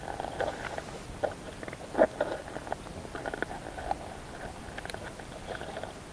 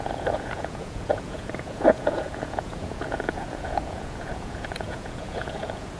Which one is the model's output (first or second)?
second